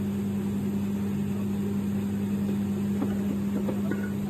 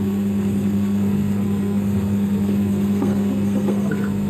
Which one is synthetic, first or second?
second